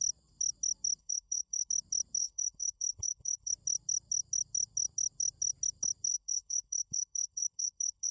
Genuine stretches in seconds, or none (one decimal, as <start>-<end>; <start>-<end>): 0.0-1.0; 1.7-2.2; 3.5-6.1

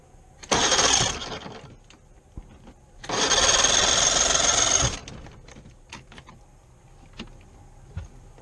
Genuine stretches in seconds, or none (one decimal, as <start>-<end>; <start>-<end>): 0.0-8.4

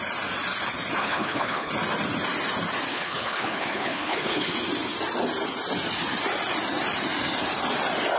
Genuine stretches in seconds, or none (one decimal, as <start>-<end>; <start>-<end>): 0.0-1.0; 1.7-2.9; 4.5-8.2

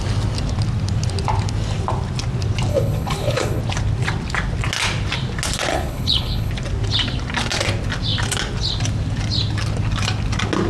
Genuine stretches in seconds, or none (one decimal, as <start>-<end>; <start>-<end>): 0.0-2.7; 3.6-5.7; 6.5-10.7

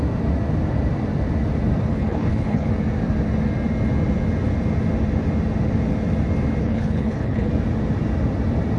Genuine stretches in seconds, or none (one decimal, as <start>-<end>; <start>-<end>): 0.0-1.9; 2.7-6.6; 7.5-8.8

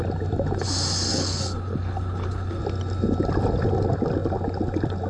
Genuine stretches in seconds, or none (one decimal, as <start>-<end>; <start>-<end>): 0.0-1.1; 2.6-5.1

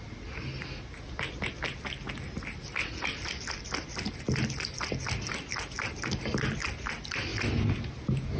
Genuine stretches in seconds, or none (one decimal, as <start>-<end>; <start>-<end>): 0.0-8.4

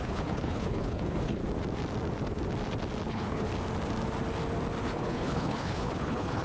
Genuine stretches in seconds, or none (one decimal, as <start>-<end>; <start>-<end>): 1.4-3.1; 3.5-4.8